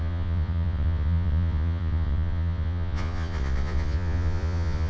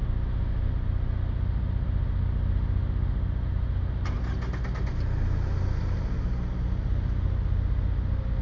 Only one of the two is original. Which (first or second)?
second